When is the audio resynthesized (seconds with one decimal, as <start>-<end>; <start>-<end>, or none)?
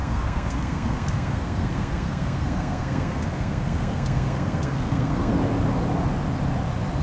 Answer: 0.0-5.3